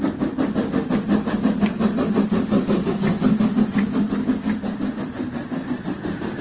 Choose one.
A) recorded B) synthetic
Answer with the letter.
A